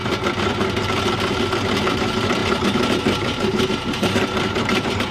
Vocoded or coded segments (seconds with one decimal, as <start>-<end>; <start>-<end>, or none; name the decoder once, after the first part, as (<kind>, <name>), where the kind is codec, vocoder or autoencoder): 1.9-5.1 (vocoder, BigVGAN v2)